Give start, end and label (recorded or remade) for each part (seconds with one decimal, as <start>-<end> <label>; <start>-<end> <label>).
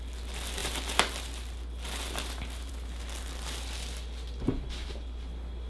0.0-5.7 recorded